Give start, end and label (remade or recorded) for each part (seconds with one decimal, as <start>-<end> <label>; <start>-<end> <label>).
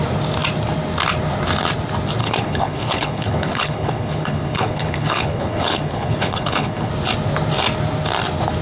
0.0-2.2 recorded; 2.2-6.9 remade; 6.9-8.6 recorded